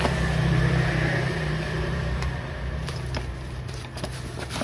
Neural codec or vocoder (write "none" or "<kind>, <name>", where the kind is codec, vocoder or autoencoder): vocoder, BigVGAN v2